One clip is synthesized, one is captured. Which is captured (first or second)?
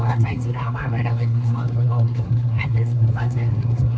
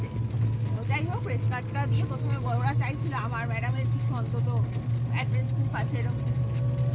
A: second